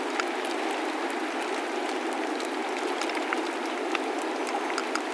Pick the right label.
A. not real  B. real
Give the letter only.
B